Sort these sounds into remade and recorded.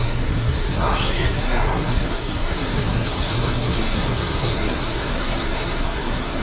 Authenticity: remade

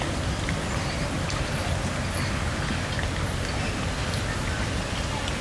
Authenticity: recorded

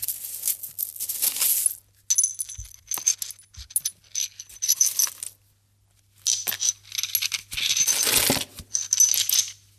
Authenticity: recorded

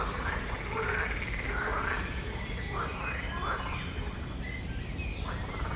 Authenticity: recorded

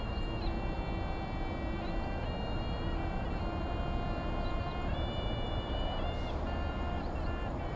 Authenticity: recorded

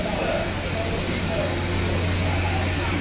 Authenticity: recorded